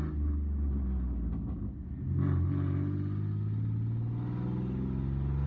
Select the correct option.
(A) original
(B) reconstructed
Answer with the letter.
A